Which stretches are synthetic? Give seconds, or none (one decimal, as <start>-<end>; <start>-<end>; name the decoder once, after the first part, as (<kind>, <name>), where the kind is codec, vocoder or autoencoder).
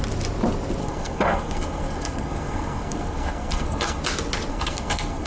0.8-4.0 (codec, SNAC); 4.5-5.3